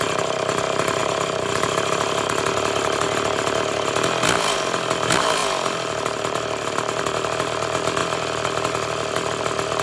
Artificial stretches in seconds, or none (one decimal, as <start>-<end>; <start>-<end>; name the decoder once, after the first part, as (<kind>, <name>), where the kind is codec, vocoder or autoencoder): 5.4-7.0 (vocoder, BigVGAN v2)